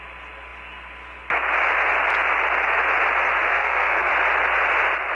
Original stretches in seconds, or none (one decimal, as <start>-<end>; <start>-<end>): 0.0-3.5; 4.1-5.1

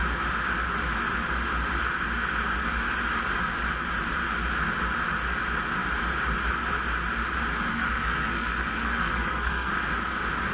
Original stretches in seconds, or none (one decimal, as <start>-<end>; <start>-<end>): 0.0-7.7; 9.7-10.5

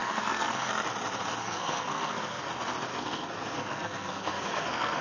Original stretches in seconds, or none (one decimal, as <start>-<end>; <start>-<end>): 0.7-1.4; 2.5-2.9

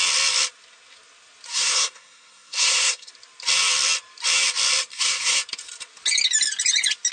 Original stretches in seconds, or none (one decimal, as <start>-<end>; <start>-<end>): 0.0-1.5; 3.1-4.9; 5.4-7.1